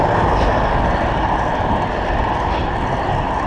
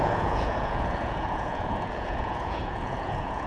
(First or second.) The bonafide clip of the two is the first